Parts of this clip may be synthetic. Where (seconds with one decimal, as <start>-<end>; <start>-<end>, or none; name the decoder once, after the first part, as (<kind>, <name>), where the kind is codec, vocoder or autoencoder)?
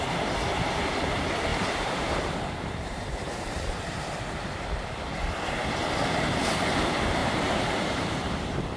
1.5-4.2 (vocoder, BigVGAN v2); 7.2-8.8